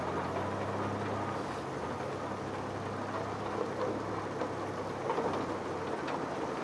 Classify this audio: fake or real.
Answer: real